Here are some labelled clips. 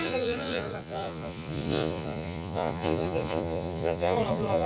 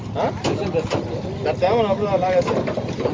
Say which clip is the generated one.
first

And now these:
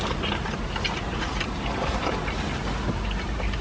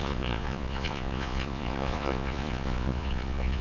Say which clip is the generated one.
second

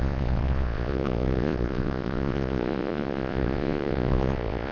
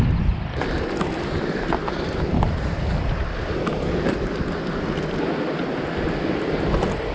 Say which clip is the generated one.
first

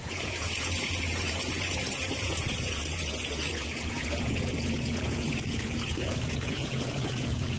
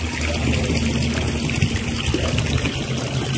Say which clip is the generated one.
first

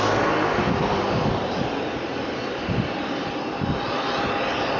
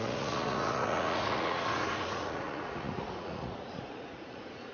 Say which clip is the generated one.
second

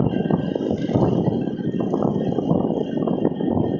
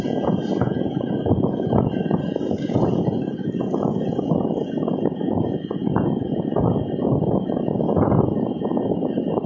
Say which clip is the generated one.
second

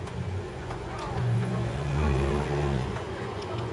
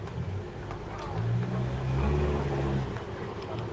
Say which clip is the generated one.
first